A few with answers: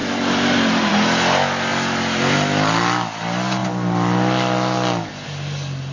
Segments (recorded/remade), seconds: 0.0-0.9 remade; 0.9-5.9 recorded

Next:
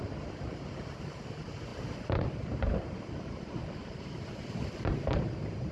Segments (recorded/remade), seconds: 0.0-5.7 remade